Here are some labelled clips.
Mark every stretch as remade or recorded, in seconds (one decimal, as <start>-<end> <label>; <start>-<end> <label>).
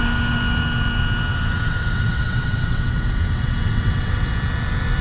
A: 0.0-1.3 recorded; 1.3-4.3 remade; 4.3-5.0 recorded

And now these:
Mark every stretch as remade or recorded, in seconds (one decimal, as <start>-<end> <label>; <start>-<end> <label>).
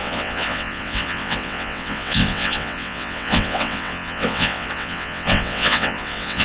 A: 0.0-6.4 remade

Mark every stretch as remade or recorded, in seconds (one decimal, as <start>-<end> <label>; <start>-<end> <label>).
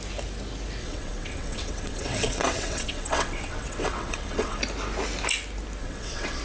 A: 0.0-0.8 recorded; 0.8-4.6 remade; 4.6-5.8 recorded; 5.8-6.4 remade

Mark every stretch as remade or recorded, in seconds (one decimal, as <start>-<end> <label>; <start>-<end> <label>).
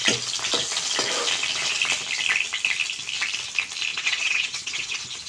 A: 0.0-3.9 recorded; 3.9-5.3 remade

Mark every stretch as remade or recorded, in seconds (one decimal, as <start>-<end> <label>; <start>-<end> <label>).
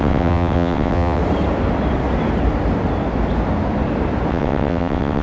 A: 0.0-1.2 remade; 1.2-4.3 recorded; 4.3-5.2 remade